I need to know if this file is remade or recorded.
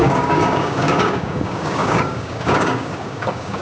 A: remade